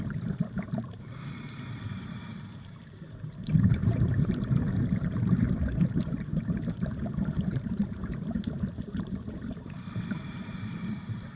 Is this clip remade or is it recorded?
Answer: remade